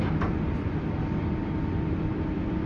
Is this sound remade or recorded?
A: recorded